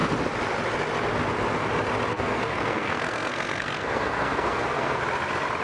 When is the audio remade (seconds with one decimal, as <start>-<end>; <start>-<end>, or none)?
2.1-5.0